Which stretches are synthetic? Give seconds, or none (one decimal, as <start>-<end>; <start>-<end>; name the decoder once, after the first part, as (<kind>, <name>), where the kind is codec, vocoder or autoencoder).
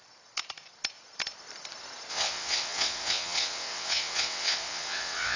2.1-5.4 (vocoder, WaveNeXt)